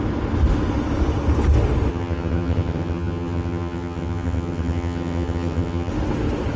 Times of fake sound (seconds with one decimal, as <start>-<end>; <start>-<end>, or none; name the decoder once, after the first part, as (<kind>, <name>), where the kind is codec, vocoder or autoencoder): 1.9-5.9 (vocoder, HiFi-GAN)

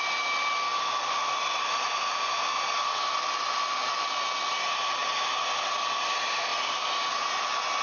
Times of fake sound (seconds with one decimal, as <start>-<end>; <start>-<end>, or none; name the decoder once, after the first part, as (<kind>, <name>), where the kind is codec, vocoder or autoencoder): none